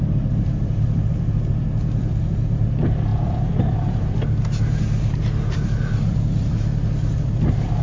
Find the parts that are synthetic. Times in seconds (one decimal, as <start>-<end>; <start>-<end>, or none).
0.0-7.8